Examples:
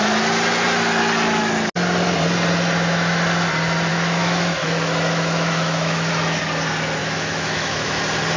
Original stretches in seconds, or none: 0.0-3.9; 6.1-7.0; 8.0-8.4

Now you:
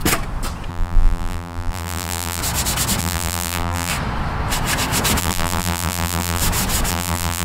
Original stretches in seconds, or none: 0.0-0.7; 2.4-3.0; 3.9-5.2; 6.4-6.9

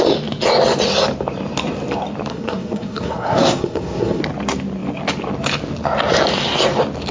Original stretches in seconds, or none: 0.0-2.3; 4.2-7.1

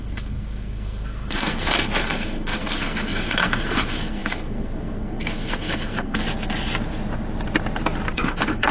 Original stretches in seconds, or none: 6.2-8.1

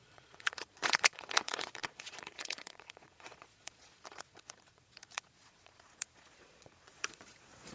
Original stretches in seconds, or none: none